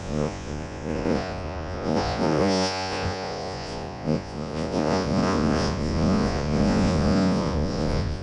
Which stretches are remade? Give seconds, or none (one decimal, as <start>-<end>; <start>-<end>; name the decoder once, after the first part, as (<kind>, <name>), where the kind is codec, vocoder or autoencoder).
0.0-8.2 (vocoder, Vocos)